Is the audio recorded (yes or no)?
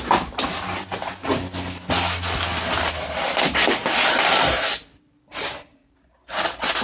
yes